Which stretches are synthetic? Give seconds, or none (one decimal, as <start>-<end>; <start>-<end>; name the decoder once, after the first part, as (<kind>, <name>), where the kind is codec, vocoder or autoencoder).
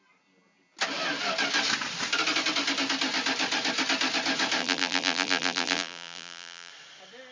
4.6-6.7 (vocoder, BigVGAN v2)